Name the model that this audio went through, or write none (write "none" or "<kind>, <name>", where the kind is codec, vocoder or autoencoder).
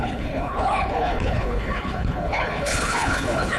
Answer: codec, HILCodec